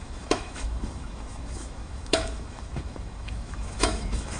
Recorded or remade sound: remade